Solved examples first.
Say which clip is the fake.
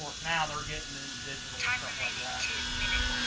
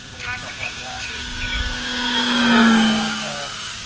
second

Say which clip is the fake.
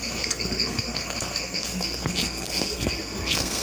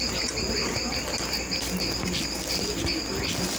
first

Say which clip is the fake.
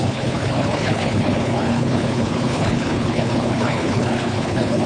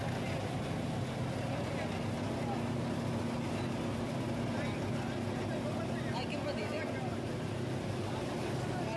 first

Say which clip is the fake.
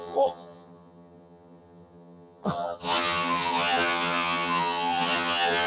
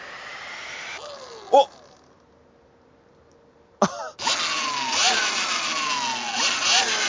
first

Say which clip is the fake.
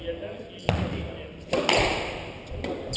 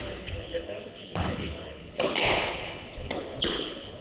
second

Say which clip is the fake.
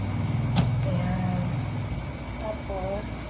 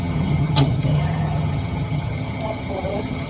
second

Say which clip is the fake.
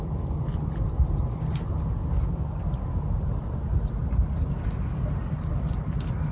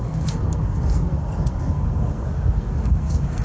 second